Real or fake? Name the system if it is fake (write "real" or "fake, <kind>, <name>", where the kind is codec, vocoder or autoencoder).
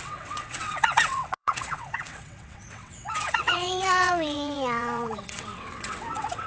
fake, vocoder, WaveNeXt